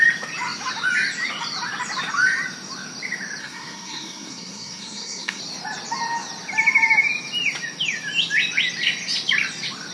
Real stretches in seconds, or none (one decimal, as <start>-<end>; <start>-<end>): 0.0-3.4; 5.4-9.9